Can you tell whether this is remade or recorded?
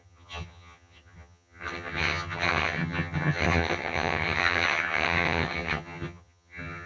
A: remade